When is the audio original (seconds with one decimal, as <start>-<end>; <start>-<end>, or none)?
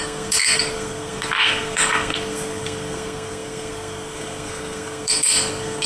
none